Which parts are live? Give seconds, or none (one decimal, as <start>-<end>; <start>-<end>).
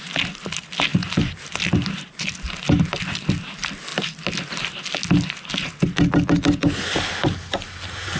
0.0-8.2